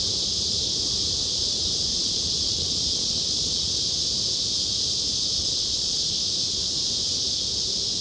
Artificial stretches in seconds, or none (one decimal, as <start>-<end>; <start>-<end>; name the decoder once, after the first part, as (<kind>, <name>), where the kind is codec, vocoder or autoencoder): 1.9-3.7 (vocoder, Vocos); 5.4-6.1